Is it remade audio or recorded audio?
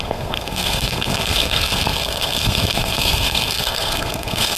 remade